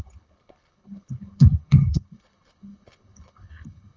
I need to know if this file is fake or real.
fake